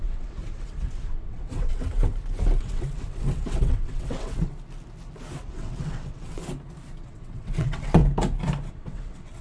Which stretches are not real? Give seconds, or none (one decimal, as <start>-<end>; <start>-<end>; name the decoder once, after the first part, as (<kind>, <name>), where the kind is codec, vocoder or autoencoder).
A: 0.0-1.9 (vocoder, WaveNeXt); 2.6-4.5; 5.4-6.4; 7.0-8.0; 8.7-9.4